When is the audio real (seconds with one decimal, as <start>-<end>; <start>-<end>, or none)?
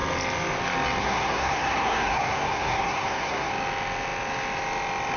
0.0-1.0; 3.5-5.2